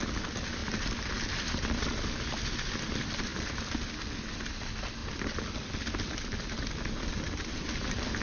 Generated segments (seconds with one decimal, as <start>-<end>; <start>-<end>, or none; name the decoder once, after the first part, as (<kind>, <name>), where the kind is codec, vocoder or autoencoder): 3.3-3.8 (vocoder, BigVGAN v2); 5.0-7.3